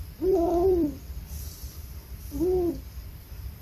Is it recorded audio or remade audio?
remade